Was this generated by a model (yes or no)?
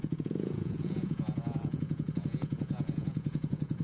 yes